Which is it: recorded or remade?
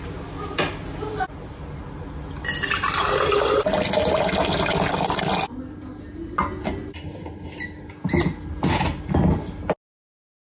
recorded